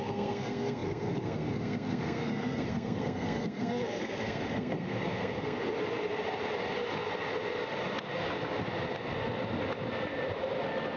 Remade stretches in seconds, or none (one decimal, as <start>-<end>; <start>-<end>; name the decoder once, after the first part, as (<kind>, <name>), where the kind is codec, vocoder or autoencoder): 0.0-5.6 (codec, SNAC)